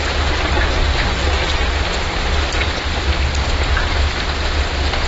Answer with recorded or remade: recorded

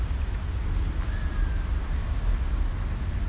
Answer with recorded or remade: recorded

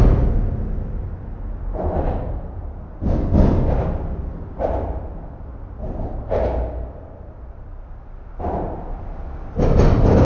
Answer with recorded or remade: recorded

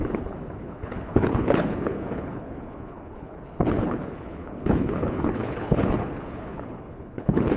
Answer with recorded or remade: remade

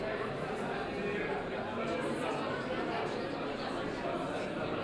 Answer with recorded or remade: recorded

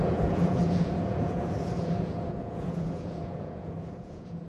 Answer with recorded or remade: remade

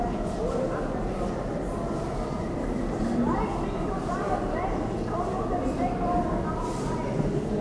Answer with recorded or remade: recorded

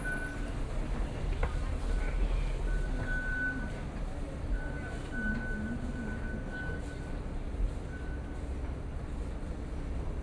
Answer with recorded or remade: recorded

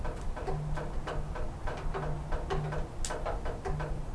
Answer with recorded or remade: recorded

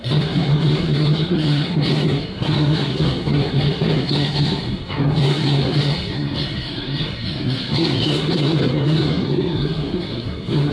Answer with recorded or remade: remade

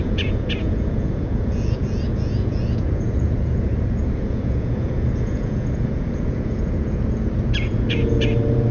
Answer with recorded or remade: remade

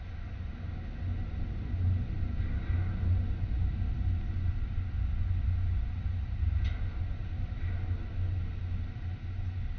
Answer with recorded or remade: recorded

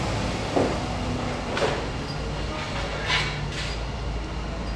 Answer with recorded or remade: recorded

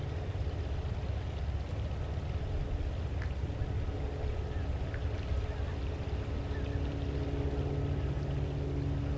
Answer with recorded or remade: recorded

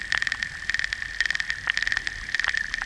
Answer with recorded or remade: recorded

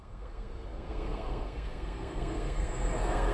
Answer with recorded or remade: remade